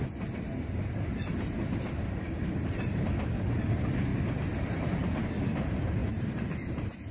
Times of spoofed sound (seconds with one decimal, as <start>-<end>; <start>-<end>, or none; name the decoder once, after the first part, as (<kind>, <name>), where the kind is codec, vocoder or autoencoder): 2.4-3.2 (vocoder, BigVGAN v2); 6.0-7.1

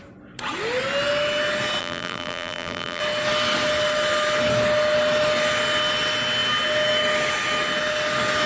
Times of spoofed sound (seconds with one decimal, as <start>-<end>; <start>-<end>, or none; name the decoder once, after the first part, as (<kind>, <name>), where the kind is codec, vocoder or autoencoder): 1.8-3.0 (vocoder, BigVGAN v2)

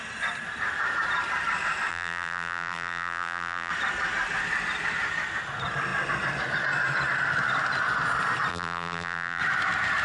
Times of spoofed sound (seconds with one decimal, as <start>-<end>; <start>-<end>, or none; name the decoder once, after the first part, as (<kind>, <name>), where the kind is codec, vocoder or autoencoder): 1.9-3.7 (vocoder, BigVGAN v2); 8.5-9.4

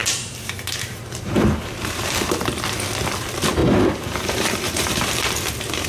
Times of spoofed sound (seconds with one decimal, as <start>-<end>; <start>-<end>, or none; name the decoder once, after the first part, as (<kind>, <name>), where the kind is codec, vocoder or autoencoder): 0.0-2.3 (vocoder, BigVGAN v2); 3.6-5.1